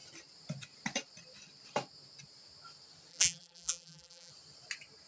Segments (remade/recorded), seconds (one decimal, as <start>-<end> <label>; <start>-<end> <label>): 0.0-3.1 recorded; 3.1-4.3 remade; 4.3-5.1 recorded